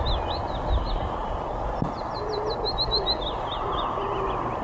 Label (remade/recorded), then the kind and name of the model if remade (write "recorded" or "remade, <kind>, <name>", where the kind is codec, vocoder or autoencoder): recorded